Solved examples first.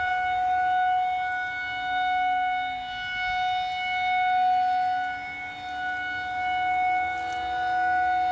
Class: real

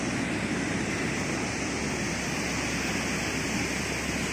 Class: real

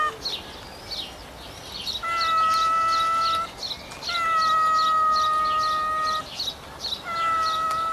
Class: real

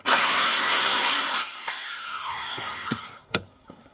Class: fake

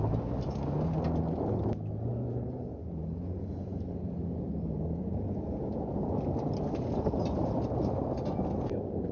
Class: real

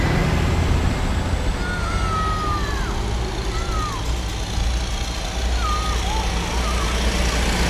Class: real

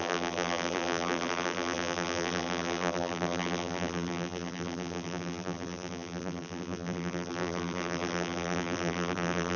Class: fake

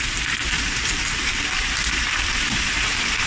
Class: fake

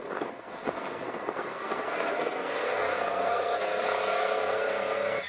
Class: fake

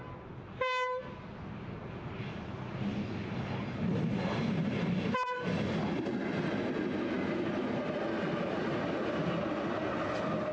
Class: real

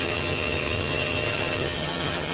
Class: fake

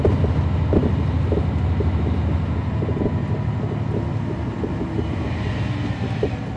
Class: real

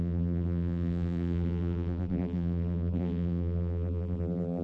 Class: fake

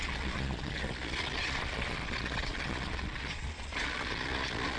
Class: fake